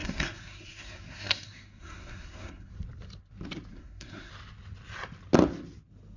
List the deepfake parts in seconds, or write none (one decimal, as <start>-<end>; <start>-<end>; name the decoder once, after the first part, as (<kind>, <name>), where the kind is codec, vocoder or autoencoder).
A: 0.0-2.7 (codec, SNAC); 3.7-4.3